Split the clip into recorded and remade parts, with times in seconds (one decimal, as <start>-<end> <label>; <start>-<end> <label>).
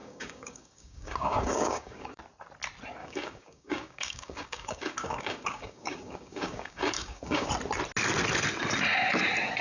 0.0-2.2 remade; 2.2-3.0 recorded; 3.0-7.5 remade; 7.5-9.6 recorded